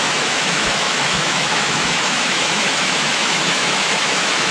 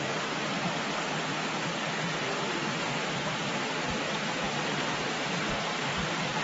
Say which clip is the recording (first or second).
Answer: second